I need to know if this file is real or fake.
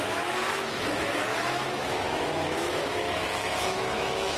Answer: fake